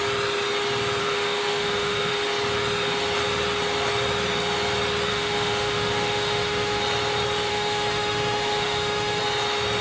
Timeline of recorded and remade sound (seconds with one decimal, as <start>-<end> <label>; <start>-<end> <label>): 0.0-1.0 recorded; 1.0-2.1 remade; 2.1-5.1 recorded; 5.1-6.8 remade; 6.8-7.5 recorded; 7.5-9.2 remade; 9.2-9.8 recorded